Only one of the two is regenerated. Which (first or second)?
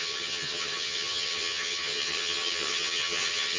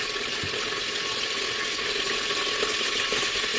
first